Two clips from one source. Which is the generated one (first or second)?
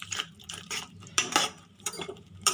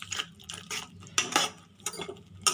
first